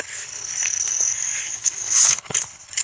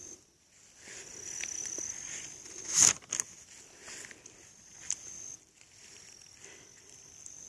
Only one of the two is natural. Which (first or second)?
second